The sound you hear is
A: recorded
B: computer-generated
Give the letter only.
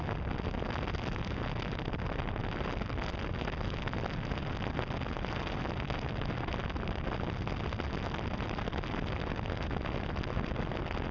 A